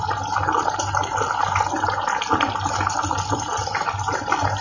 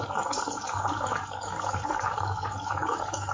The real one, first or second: first